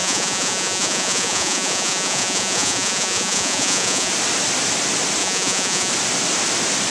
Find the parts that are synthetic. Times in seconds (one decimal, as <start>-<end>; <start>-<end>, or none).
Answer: 0.0-4.1; 5.2-5.9